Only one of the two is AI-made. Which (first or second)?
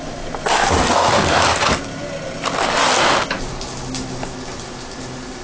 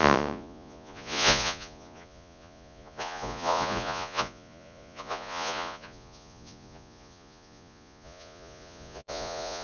second